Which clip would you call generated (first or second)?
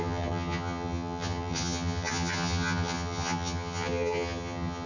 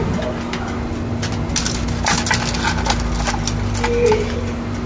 first